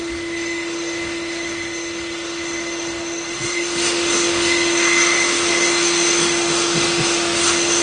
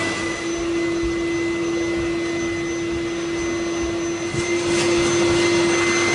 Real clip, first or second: second